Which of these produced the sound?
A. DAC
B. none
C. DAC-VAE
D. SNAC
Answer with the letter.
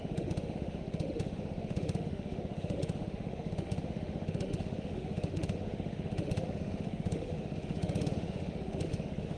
C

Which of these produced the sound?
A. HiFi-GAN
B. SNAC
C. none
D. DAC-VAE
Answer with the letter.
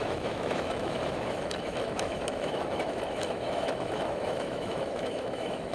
D